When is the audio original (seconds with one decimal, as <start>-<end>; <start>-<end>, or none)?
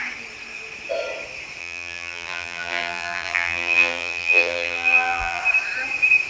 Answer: 0.0-1.6; 5.4-6.3